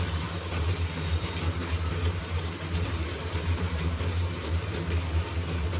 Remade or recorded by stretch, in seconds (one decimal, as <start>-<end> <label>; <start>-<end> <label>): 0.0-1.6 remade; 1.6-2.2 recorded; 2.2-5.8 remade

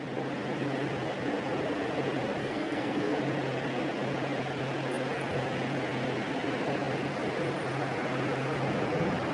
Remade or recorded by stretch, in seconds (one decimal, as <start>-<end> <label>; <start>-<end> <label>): 0.0-2.4 recorded; 2.4-3.2 remade; 3.2-9.3 recorded

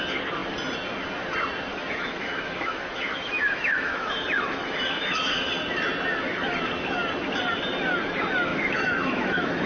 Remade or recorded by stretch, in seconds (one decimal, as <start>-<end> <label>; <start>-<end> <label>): 0.0-1.7 recorded; 1.7-5.5 remade; 5.5-8.5 recorded; 8.5-9.7 remade

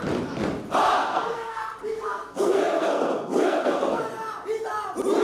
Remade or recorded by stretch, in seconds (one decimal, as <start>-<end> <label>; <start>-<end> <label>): 0.0-1.0 recorded; 1.0-4.1 remade; 4.1-5.2 recorded